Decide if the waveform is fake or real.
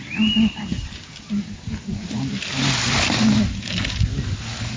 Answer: real